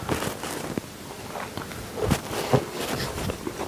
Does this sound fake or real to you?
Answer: real